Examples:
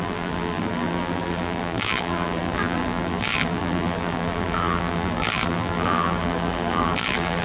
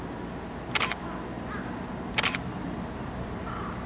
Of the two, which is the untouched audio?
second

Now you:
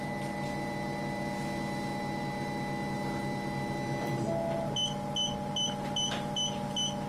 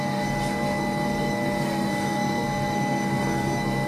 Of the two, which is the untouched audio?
first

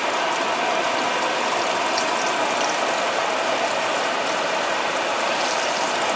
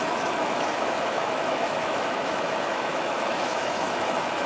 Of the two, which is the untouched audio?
first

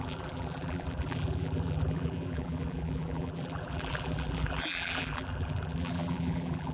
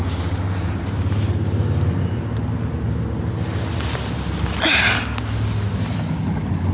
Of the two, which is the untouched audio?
second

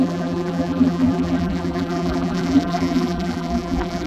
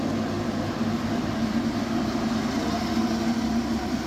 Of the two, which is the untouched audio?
second